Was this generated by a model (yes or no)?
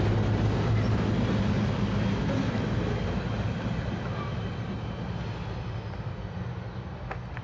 no